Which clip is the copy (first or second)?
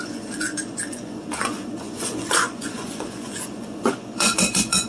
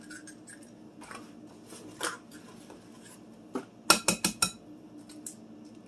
first